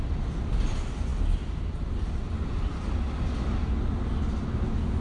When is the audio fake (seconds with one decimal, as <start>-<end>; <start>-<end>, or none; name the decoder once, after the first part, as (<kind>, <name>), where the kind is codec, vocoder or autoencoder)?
none